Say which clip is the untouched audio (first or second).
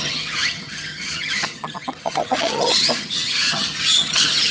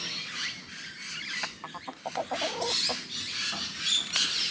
second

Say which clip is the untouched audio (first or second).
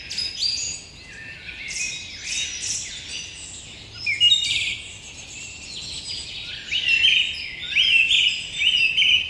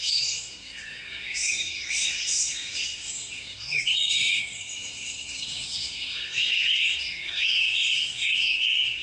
first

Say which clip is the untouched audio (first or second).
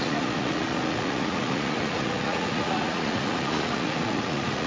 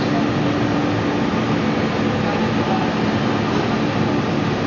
second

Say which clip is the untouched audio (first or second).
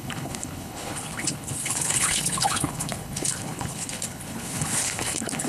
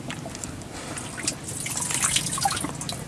second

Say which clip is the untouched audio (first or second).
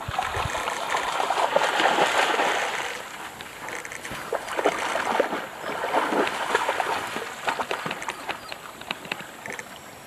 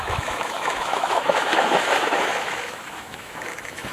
first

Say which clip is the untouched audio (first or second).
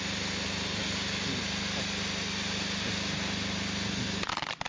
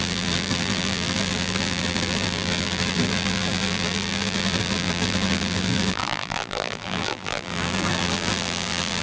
first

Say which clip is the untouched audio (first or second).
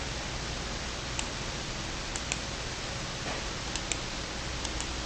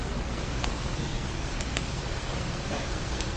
first